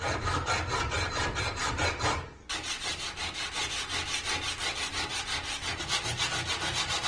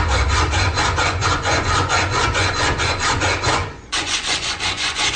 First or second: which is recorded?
first